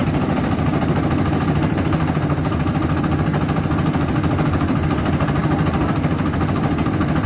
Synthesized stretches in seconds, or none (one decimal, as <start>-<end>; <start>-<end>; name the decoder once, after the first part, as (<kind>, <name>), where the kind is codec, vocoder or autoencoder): none